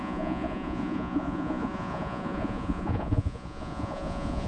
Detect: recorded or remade remade